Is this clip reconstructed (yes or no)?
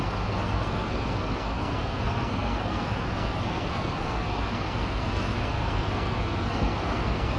yes